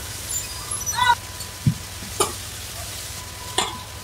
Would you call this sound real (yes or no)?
no